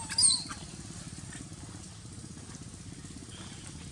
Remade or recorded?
recorded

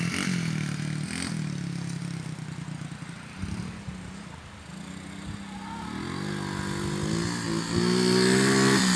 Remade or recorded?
recorded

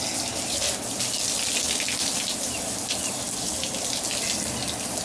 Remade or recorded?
recorded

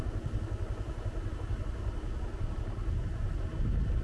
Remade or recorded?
recorded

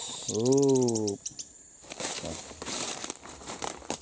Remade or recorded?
remade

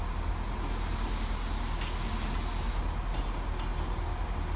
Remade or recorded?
recorded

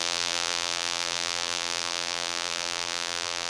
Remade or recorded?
remade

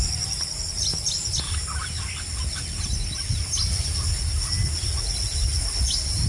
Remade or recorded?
recorded